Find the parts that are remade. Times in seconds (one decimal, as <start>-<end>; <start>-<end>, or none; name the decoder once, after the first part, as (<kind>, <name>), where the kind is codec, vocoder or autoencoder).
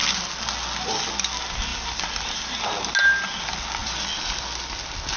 none